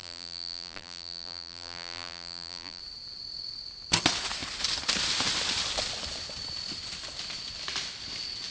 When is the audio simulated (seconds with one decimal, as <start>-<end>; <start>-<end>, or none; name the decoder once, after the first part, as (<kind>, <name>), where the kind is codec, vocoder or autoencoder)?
0.0-2.8 (vocoder, BigVGAN v2)